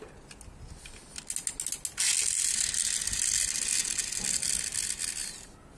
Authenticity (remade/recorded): recorded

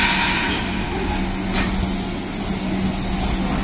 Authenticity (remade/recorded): recorded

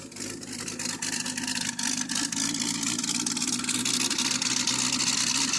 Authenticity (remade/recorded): recorded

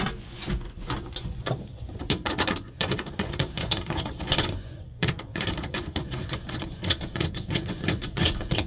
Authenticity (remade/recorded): remade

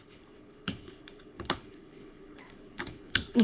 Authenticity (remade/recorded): remade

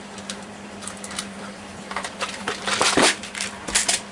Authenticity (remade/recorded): remade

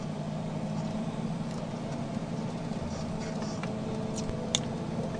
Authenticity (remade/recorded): recorded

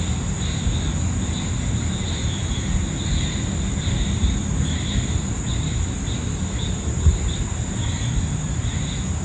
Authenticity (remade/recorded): recorded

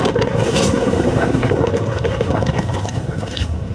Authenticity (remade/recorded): remade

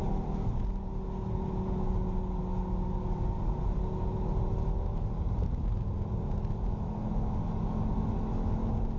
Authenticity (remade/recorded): recorded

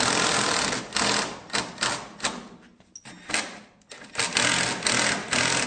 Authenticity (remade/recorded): recorded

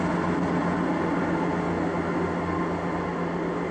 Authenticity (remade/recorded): recorded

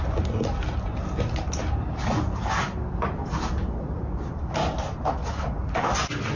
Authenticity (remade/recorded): recorded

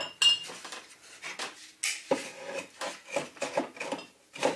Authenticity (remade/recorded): recorded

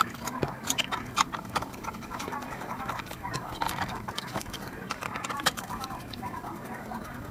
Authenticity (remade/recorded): remade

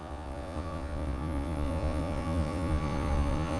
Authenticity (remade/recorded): remade